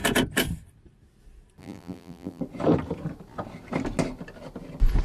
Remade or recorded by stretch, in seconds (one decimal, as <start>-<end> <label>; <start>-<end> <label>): 0.0-1.6 recorded; 1.6-2.4 remade; 2.4-5.0 recorded